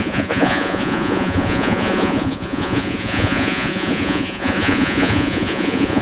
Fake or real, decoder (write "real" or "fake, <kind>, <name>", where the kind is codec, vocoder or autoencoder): fake, vocoder, Vocos